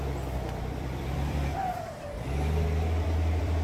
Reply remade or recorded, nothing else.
remade